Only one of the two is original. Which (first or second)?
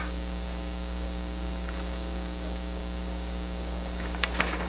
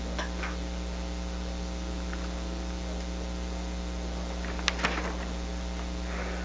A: second